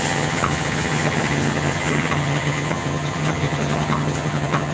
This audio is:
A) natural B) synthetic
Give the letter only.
B